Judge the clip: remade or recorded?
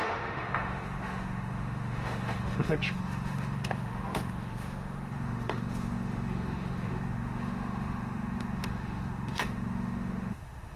remade